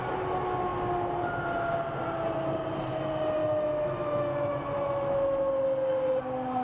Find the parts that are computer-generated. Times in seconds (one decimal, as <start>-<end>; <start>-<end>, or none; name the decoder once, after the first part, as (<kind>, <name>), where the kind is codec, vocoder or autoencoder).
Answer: 3.4-5.5 (autoencoder, DAC-VAE)